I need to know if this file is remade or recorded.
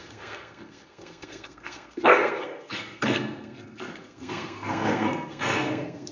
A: remade